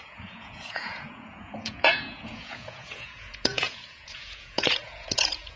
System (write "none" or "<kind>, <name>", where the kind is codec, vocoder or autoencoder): vocoder, Vocos